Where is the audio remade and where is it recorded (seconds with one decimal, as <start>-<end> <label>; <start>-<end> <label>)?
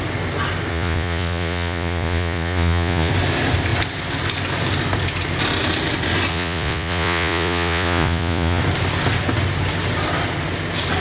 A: 0.0-0.7 recorded; 0.7-3.1 remade; 3.1-6.3 recorded; 6.3-8.6 remade; 8.6-11.0 recorded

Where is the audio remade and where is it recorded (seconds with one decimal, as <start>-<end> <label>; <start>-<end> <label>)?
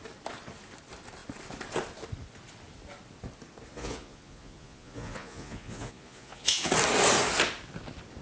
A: 0.0-3.7 recorded; 3.7-6.7 remade; 6.7-8.2 recorded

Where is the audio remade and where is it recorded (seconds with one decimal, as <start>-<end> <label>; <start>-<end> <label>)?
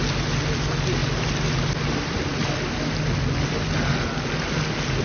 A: 0.0-5.0 recorded